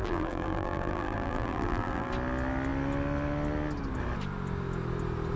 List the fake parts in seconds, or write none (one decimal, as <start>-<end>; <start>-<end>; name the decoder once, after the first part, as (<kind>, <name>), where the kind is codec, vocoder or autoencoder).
0.0-2.1 (vocoder, BigVGAN v2)